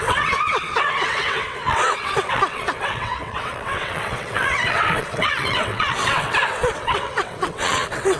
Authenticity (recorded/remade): remade